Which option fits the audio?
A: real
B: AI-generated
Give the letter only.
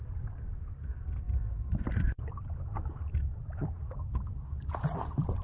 B